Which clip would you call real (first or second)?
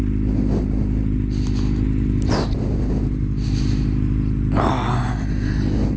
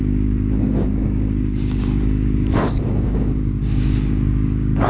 first